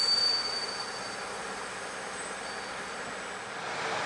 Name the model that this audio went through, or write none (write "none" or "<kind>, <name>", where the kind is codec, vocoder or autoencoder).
none